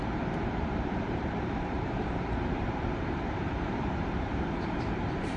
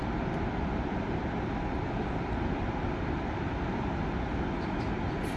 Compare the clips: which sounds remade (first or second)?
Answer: first